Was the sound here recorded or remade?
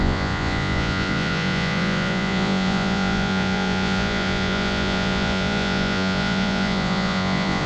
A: remade